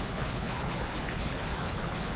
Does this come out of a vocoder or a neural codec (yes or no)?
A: yes